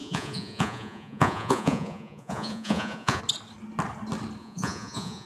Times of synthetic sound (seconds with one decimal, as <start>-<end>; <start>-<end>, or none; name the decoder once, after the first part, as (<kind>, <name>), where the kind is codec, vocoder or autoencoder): 0.0-3.2 (vocoder, Vocos); 4.4-5.3